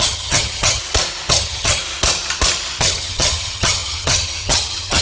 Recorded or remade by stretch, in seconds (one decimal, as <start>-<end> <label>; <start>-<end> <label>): 0.0-0.8 remade; 0.8-1.3 recorded; 1.3-1.8 remade; 1.8-2.8 recorded; 2.8-5.0 remade